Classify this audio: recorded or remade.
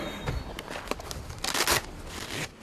recorded